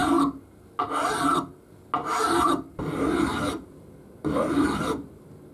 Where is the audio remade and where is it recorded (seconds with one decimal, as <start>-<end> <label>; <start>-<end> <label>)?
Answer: 0.0-2.0 recorded; 2.0-5.5 remade

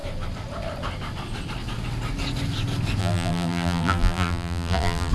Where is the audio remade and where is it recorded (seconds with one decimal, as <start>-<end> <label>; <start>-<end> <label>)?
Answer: 0.0-3.0 recorded; 3.0-5.1 remade